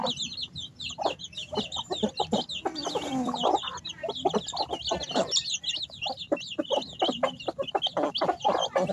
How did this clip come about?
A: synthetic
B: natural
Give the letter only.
B